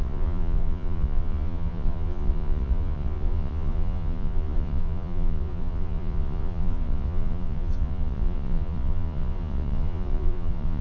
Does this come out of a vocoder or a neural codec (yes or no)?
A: yes